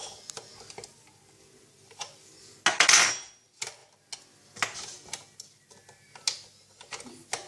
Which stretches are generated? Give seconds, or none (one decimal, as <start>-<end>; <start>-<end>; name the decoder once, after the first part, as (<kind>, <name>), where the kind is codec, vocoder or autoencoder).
none